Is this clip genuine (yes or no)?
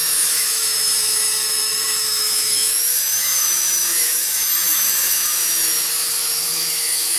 no